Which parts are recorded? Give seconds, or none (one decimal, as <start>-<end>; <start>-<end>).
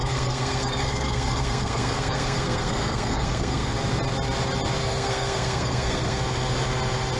3.7-4.8; 6.2-7.2